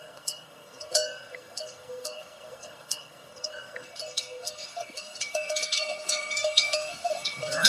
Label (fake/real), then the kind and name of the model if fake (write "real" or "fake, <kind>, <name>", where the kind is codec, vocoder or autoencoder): fake, codec, SNAC